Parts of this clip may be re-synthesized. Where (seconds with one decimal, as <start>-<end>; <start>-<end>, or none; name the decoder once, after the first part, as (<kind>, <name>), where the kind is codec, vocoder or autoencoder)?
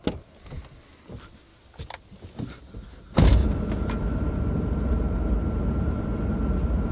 3.4-6.9 (vocoder, BigVGAN v2)